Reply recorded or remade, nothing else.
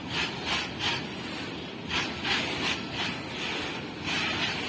recorded